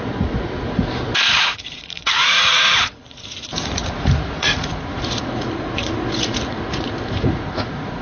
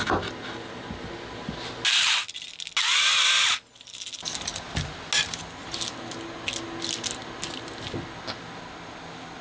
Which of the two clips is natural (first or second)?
second